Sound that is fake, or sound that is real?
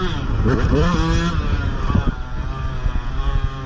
real